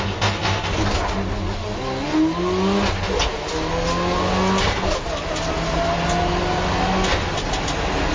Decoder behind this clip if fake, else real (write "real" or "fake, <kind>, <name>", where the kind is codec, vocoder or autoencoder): real